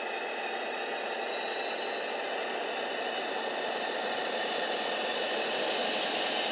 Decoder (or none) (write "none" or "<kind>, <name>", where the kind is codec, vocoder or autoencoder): none